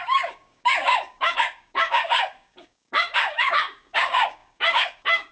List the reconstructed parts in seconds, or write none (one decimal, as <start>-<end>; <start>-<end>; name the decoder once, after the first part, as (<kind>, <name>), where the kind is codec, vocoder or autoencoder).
0.0-5.3 (codec, DAC)